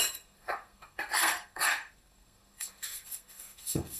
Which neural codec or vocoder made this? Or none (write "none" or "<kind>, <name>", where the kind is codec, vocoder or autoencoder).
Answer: codec, SNAC